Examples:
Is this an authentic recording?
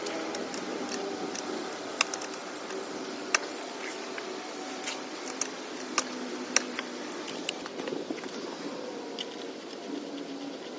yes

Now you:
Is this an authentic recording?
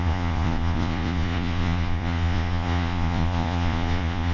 no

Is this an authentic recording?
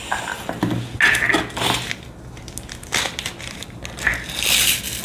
yes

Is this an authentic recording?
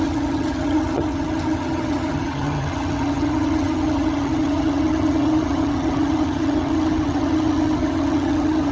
no